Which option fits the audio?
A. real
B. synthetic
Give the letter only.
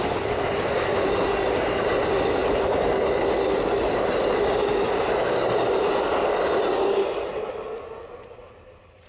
A